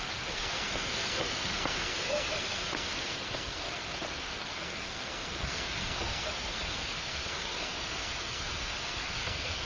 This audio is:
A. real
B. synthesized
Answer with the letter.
B